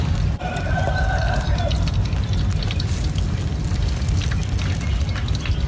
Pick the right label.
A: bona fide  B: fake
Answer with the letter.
A